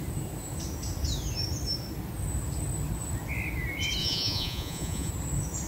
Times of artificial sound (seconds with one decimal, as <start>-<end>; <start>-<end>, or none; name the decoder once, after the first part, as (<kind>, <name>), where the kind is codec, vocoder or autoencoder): 4.0-5.1 (vocoder, Vocos)